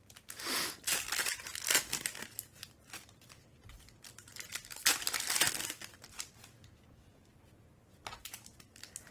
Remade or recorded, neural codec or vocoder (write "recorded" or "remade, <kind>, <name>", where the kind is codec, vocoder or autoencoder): recorded